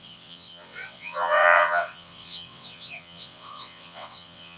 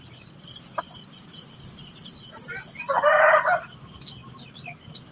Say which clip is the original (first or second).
second